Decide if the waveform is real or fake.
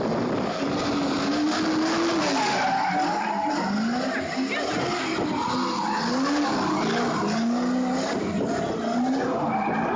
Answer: real